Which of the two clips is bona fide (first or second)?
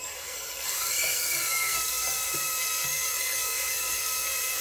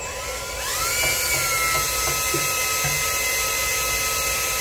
second